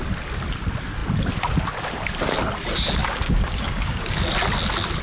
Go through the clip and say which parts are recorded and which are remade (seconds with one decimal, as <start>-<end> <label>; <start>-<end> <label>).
0.0-3.0 recorded; 3.0-4.2 remade; 4.2-5.0 recorded